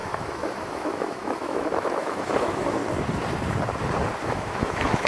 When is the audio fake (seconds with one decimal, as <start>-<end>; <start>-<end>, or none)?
0.0-2.8; 4.2-5.1

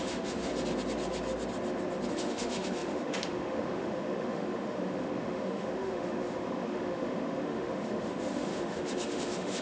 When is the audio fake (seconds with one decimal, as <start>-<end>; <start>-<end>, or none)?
0.0-0.5; 2.1-9.6

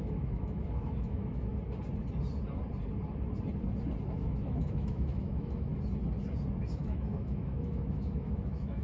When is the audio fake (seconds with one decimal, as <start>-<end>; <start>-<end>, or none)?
0.0-1.5; 4.1-5.7; 6.6-8.8

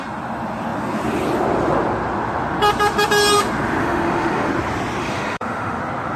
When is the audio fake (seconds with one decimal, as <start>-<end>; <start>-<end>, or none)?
3.8-4.5; 5.0-5.8

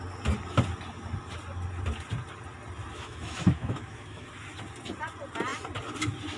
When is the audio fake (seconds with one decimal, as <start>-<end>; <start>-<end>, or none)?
2.9-4.3

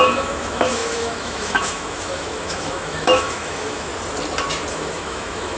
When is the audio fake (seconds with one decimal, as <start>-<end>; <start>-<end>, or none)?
0.0-3.9; 4.7-5.6

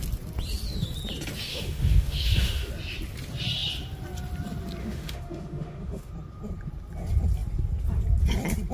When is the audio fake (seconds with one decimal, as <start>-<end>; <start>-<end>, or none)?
1.5-2.7; 4.8-6.1